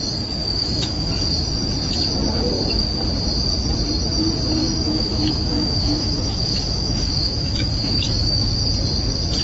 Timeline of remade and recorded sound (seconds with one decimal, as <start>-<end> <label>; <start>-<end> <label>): 0.0-0.4 recorded; 0.4-1.1 remade; 1.1-4.6 recorded; 4.6-8.5 remade; 8.5-9.4 recorded